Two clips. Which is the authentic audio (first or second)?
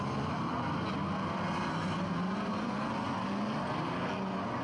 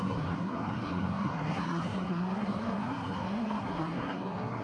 first